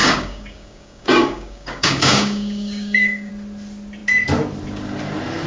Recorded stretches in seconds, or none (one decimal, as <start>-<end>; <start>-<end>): 3.3-5.5

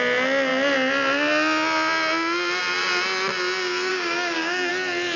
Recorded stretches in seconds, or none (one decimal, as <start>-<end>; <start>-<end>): 0.0-3.9; 4.7-5.2

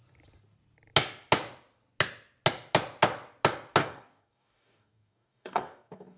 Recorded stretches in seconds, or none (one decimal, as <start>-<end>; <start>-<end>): 0.0-3.8

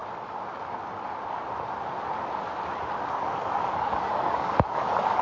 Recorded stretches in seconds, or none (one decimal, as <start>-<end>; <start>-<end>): 0.0-3.1

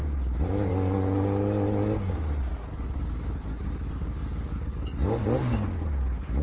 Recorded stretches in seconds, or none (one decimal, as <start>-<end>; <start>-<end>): 0.0-2.5; 5.2-6.4

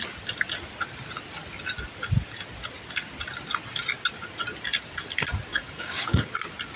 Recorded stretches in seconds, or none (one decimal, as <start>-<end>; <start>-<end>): 0.0-5.5; 6.3-6.8

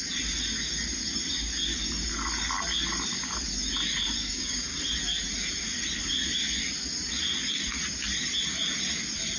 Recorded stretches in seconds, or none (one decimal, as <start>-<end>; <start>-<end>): 0.0-4.2; 4.8-9.4

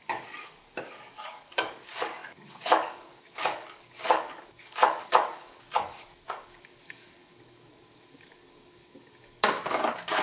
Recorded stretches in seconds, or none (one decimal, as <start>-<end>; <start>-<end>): none